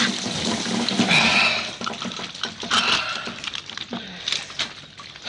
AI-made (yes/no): no